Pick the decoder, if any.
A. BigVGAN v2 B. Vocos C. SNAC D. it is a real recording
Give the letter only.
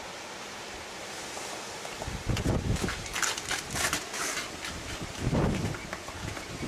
D